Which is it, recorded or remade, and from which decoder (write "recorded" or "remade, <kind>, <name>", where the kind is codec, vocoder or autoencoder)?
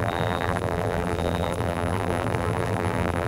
remade, vocoder, BigVGAN v2